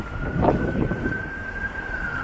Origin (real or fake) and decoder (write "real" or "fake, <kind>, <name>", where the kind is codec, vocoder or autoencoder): fake, vocoder, BigVGAN v2